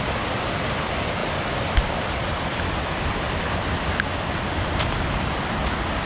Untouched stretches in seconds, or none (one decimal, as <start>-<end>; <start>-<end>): 0.0-6.1